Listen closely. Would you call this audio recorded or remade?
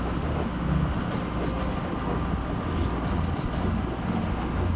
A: recorded